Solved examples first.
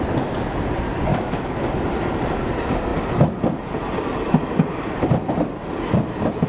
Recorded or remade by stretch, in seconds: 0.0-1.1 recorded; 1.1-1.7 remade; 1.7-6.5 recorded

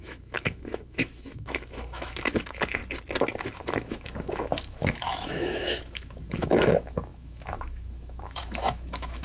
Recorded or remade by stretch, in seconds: 0.0-2.8 remade; 2.8-3.5 recorded; 3.5-9.2 remade

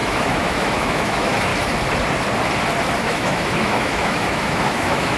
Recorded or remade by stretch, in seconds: 0.0-1.5 remade; 1.5-3.0 recorded; 3.0-5.2 remade

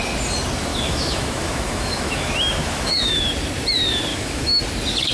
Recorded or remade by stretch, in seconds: 0.0-0.7 recorded; 0.7-3.2 remade; 3.2-4.1 recorded; 4.1-4.6 remade; 4.6-5.1 recorded

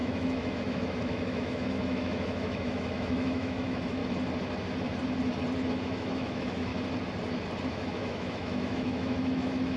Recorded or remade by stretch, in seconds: 0.0-4.0 remade; 4.0-5.7 recorded; 5.7-6.7 remade; 6.7-7.7 recorded; 7.7-9.8 remade

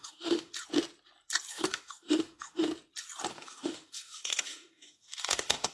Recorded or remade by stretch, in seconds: 0.0-0.5 remade; 0.5-1.5 recorded; 1.5-2.7 remade; 2.7-3.3 recorded; 3.3-5.7 remade

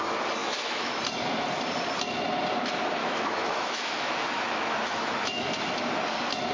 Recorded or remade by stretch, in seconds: 0.0-0.4 recorded; 0.4-1.0 remade; 1.0-3.0 recorded; 3.0-5.5 remade; 5.5-6.5 recorded